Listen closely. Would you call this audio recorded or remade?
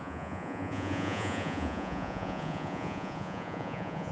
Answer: remade